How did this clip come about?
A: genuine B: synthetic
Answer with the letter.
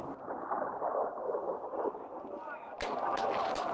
A